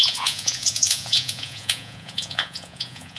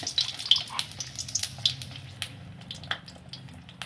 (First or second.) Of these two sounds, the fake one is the first